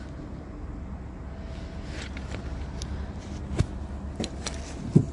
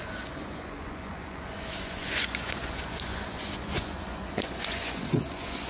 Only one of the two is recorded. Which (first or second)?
first